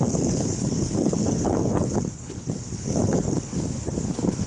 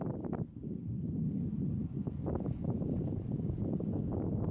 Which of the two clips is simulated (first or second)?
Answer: first